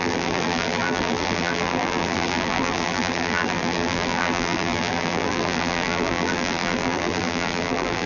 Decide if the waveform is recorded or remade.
remade